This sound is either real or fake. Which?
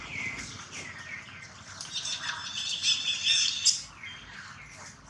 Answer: real